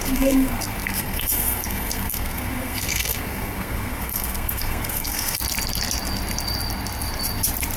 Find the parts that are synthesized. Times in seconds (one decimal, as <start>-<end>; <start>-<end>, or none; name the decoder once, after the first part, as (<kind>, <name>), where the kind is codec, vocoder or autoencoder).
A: 0.0-5.4 (codec, SNAC)